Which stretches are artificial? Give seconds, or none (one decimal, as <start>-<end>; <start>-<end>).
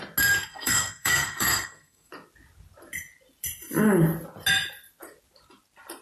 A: 0.5-2.1